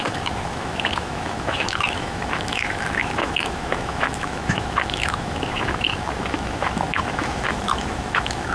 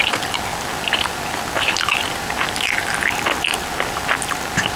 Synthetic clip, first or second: first